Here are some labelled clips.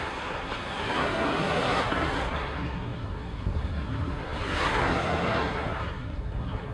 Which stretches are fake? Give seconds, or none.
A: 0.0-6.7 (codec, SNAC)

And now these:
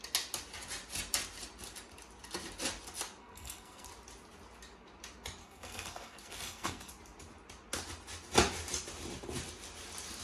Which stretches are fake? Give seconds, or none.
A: 3.2-3.9 (codec, SNAC); 5.4-6.9

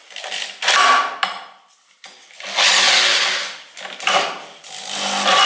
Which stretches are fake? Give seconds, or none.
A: none

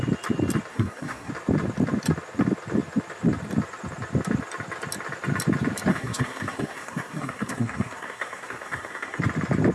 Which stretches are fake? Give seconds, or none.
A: 0.7-1.3 (codec, SNAC); 5.9-9.2